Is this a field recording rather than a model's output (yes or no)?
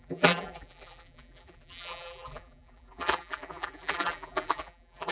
no